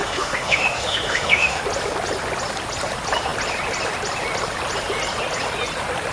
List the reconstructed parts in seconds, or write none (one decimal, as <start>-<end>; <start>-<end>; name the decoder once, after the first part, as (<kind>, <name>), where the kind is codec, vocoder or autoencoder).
0.0-1.6 (autoencoder, DAC-VAE)